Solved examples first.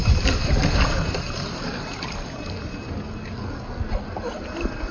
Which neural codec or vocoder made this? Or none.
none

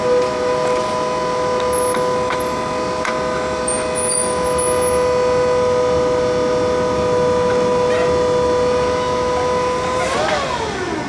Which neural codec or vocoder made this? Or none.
none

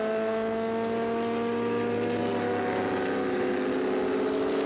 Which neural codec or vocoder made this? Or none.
none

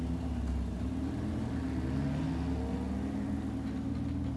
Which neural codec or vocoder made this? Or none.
none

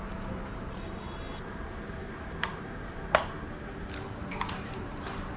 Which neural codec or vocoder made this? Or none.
vocoder, BigVGAN v2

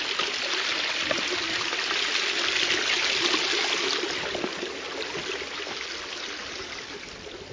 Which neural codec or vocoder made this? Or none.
none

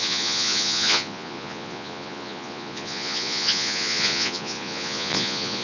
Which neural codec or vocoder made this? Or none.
vocoder, Vocos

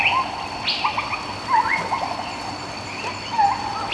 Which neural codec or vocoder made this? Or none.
none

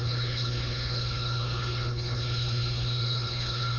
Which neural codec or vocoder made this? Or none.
codec, HILCodec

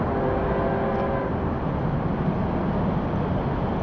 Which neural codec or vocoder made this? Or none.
none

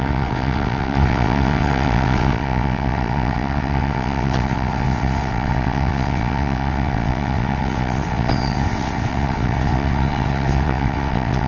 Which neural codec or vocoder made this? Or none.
vocoder, WaveNeXt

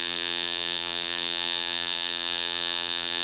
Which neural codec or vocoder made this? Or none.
vocoder, BigVGAN v2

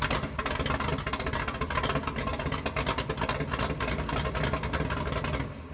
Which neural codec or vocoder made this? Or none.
none